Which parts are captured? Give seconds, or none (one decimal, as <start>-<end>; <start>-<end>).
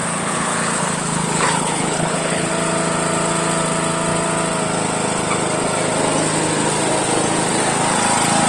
2.5-8.5